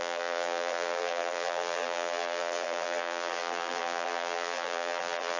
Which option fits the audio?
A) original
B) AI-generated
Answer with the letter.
B